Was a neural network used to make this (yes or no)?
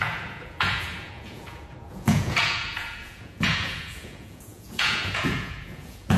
yes